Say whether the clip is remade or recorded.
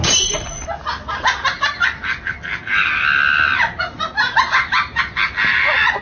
recorded